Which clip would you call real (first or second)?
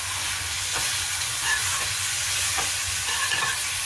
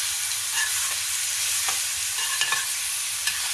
second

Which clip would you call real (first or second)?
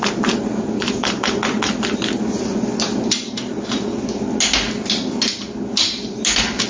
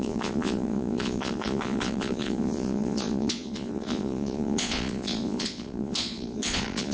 first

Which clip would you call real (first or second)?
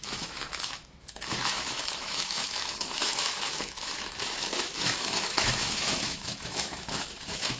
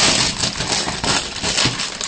second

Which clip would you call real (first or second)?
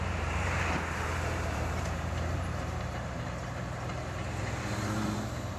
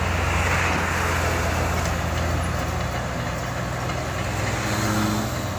second